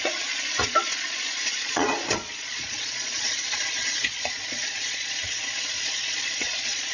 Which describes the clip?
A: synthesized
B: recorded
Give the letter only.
A